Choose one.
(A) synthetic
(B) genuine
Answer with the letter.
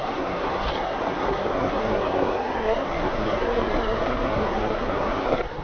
A